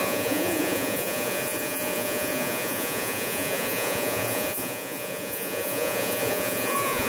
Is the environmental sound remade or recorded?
remade